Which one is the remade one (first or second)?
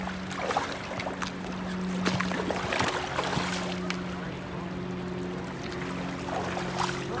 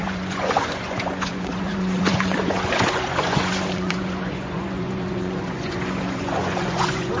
second